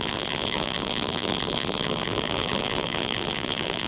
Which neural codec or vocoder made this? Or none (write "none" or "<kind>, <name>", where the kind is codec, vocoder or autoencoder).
vocoder, BigVGAN v2